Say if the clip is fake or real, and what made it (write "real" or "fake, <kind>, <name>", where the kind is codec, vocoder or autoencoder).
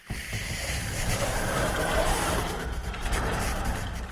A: fake, vocoder, BigVGAN v2